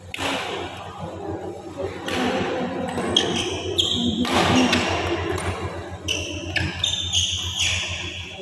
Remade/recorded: recorded